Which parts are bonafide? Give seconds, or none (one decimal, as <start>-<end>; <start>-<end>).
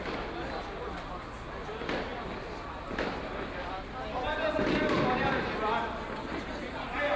0.0-7.2